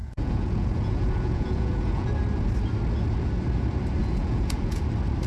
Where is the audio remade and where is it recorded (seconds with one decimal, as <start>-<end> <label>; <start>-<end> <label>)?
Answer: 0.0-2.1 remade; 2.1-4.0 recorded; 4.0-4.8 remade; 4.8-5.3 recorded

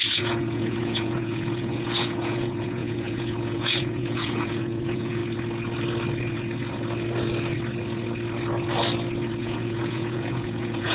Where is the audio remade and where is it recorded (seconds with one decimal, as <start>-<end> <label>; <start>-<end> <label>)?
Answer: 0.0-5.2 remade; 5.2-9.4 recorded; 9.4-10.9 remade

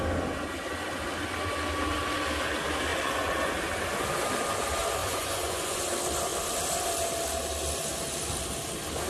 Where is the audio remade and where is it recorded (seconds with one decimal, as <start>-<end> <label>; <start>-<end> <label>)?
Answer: 0.0-2.9 recorded; 2.9-3.5 remade; 3.5-5.0 recorded; 5.0-5.8 remade; 5.8-9.1 recorded

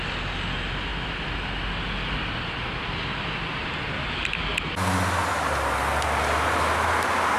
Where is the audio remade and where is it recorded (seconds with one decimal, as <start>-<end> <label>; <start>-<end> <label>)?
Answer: 0.0-7.4 recorded

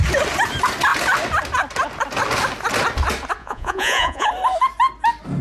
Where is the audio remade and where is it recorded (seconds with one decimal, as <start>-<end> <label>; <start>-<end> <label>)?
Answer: 0.0-3.4 recorded; 3.4-4.3 remade; 4.3-5.4 recorded

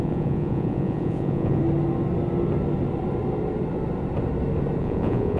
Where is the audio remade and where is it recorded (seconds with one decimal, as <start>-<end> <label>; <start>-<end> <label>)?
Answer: 0.0-1.6 remade; 1.6-4.8 recorded; 4.8-5.4 remade